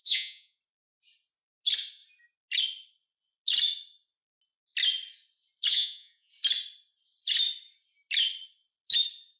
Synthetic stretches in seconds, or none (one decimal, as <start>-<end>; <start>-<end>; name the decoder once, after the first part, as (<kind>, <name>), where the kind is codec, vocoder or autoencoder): 0.0-0.6 (vocoder, Vocos); 5.7-6.3